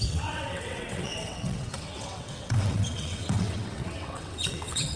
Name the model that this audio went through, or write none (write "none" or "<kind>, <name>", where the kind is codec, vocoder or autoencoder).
vocoder, WaveNeXt